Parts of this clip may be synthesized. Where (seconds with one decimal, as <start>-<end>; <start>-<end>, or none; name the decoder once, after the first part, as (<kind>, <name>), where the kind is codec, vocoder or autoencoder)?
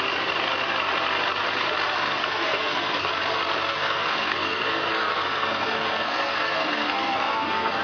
2.2-3.1 (codec, SNAC); 3.7-7.8